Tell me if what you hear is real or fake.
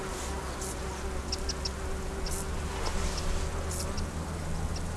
real